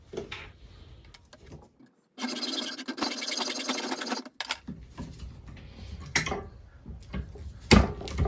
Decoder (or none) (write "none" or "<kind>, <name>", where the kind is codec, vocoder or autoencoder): none